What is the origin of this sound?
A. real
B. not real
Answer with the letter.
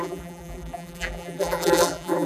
B